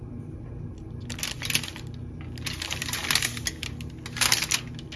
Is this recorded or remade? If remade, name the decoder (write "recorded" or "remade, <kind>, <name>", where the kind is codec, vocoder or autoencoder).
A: recorded